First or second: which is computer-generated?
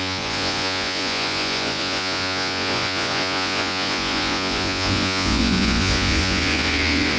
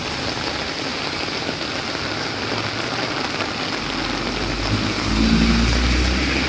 first